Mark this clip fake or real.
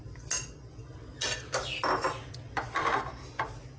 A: real